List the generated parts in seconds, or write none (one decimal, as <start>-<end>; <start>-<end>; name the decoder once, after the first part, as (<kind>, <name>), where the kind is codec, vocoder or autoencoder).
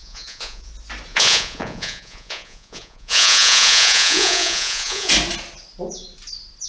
0.0-0.7 (vocoder, Vocos); 1.1-5.1